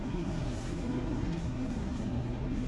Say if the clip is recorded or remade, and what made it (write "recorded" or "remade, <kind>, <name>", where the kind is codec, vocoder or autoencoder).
remade, codec, SNAC